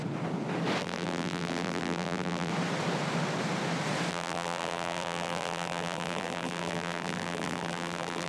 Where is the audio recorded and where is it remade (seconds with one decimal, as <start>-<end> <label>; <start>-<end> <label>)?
0.0-0.8 recorded; 0.8-2.5 remade; 2.5-4.1 recorded; 4.1-8.3 remade